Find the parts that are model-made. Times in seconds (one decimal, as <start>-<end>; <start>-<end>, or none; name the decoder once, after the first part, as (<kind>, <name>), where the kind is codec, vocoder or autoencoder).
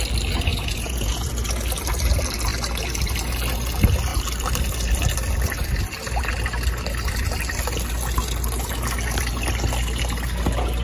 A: 0.5-1.3 (vocoder, Vocos)